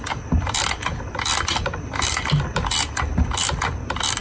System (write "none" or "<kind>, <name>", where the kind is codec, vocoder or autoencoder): none